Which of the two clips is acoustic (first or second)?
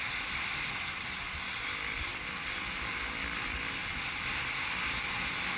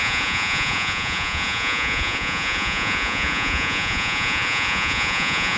first